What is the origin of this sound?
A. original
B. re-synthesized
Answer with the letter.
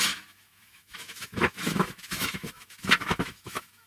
B